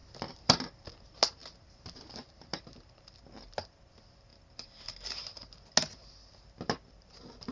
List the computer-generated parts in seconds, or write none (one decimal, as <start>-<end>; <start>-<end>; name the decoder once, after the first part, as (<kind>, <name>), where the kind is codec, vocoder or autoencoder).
none